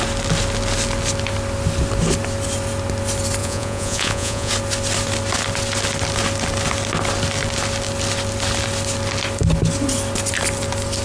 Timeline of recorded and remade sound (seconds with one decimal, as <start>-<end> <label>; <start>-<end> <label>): 0.0-3.4 recorded; 3.4-4.5 remade; 4.5-11.0 recorded